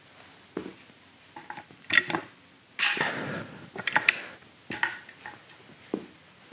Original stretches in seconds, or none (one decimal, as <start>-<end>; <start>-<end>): 0.0-6.5